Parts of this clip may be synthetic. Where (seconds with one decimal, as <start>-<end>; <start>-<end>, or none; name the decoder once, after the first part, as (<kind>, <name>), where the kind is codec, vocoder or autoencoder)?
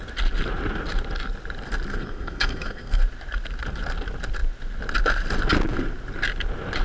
1.9-3.0 (codec, SNAC)